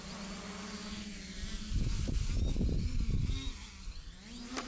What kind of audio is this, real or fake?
real